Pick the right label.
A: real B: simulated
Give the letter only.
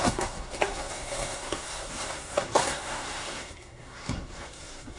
B